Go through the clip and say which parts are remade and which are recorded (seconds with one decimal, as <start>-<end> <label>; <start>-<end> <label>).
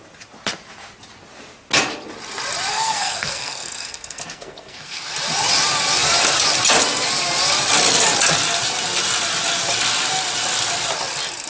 0.0-2.7 recorded; 2.7-5.0 remade; 5.0-11.5 recorded